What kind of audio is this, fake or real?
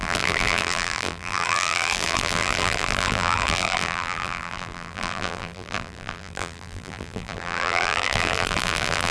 fake